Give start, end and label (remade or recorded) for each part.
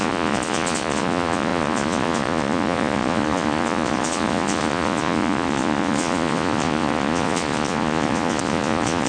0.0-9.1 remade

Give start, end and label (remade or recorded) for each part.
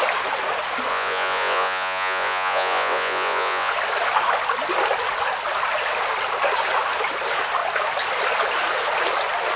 0.0-0.9 recorded; 0.9-3.7 remade; 3.7-9.6 recorded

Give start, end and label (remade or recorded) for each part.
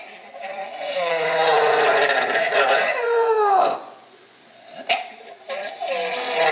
0.0-0.7 recorded; 0.7-4.6 remade; 4.6-6.5 recorded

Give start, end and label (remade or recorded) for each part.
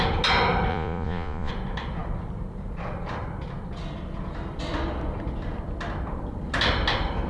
0.0-0.7 recorded; 0.7-1.5 remade; 1.5-7.3 recorded